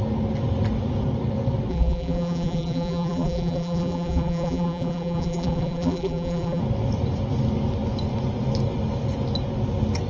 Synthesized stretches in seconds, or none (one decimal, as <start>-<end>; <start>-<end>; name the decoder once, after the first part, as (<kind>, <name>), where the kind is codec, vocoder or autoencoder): 1.7-6.6 (vocoder, BigVGAN v2)